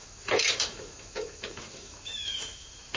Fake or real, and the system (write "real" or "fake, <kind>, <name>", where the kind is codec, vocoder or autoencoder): fake, autoencoder, DAC-VAE